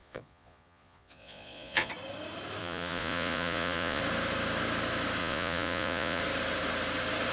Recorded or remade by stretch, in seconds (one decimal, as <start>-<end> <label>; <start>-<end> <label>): 0.0-1.9 remade; 1.9-2.6 recorded; 2.6-4.0 remade; 4.0-5.2 recorded; 5.2-6.2 remade; 6.2-7.3 recorded